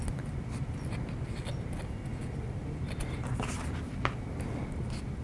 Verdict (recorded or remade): recorded